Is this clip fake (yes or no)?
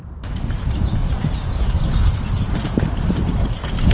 no